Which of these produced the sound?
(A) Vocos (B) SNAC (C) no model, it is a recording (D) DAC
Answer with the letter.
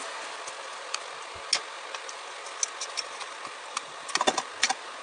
C